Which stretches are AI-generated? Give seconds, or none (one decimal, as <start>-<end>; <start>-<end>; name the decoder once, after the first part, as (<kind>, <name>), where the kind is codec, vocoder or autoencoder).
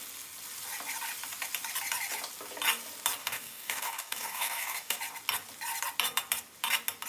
3.2-5.0 (codec, DAC)